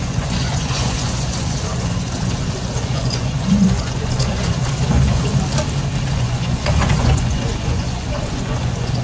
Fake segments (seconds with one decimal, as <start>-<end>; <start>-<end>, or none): 0.0-5.3; 6.1-9.0